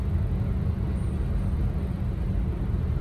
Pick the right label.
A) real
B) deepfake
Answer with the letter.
A